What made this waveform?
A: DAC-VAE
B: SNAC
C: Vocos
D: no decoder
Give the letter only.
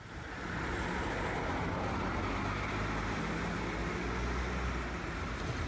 D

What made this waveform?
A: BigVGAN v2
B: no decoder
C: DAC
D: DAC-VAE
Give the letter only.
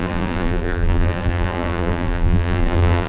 A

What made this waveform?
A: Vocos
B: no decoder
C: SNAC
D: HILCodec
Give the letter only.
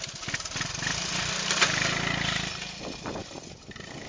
B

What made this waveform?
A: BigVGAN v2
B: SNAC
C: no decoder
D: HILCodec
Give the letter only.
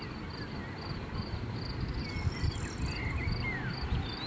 C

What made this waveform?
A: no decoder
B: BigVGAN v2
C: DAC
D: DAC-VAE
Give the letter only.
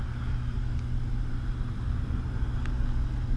A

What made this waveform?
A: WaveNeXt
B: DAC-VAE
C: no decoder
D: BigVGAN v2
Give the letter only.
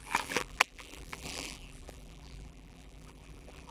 D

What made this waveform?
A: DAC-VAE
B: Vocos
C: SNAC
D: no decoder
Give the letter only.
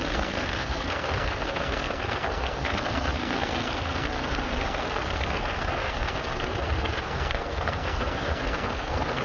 C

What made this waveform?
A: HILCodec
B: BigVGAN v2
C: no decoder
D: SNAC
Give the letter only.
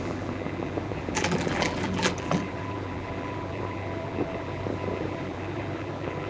B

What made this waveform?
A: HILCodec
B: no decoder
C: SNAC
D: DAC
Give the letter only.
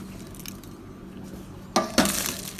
B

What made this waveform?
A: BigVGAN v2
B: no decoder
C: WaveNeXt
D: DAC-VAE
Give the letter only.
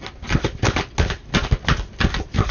B